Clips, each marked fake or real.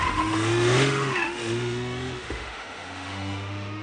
fake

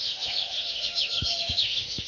fake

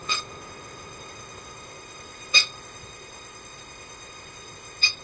fake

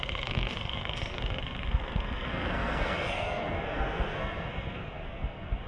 fake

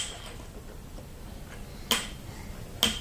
real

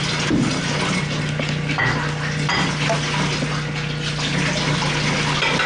real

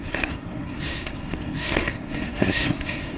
fake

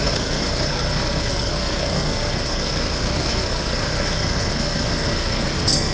fake